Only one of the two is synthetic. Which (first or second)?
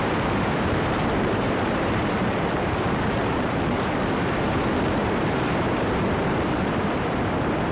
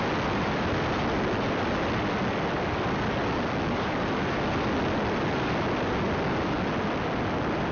first